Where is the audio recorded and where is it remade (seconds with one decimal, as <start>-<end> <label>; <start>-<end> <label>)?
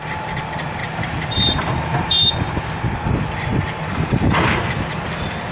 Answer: 0.0-0.8 recorded; 0.8-2.3 remade; 2.3-3.5 recorded; 3.5-4.3 remade; 4.3-5.5 recorded